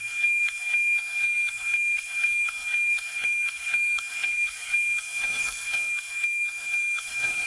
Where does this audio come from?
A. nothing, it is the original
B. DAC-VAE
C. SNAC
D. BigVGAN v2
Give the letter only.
C